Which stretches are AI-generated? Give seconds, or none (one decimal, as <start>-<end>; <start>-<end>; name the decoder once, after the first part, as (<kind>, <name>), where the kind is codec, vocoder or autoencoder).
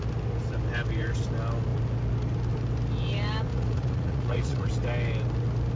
3.5-4.7 (vocoder, Vocos)